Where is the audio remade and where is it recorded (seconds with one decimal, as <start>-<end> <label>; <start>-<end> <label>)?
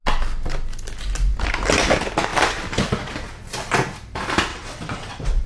0.0-4.5 recorded; 4.5-5.5 remade